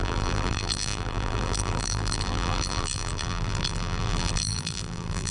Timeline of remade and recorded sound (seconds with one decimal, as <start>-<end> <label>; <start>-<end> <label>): 0.0-5.3 remade